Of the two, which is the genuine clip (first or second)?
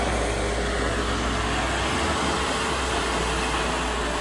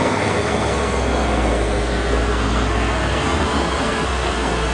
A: first